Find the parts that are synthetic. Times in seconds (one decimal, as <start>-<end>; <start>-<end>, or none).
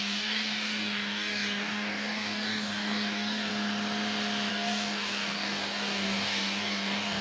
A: 0.0-3.5; 4.5-7.2